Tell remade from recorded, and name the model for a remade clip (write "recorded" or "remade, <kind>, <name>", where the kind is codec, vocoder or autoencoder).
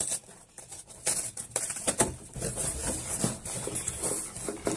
recorded